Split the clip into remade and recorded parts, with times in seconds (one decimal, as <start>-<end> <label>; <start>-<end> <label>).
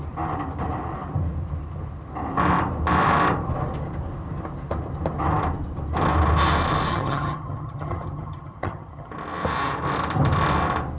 0.0-6.9 recorded; 6.9-9.1 remade; 9.1-11.0 recorded